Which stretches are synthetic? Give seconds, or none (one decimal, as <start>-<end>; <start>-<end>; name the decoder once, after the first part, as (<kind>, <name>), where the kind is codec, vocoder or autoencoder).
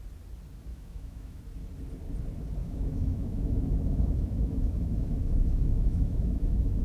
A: 0.7-1.4 (autoencoder, DAC-VAE); 2.6-6.8